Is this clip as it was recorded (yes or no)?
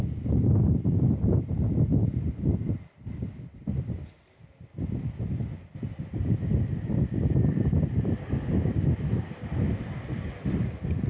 yes